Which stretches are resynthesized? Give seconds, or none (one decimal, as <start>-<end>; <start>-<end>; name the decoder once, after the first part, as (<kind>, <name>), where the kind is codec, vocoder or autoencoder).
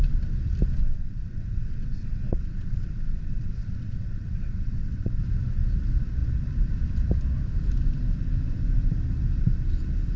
0.8-5.2 (vocoder, WaveNeXt)